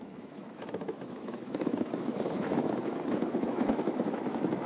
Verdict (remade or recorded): remade